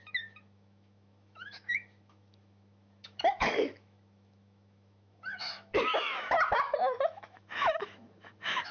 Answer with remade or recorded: remade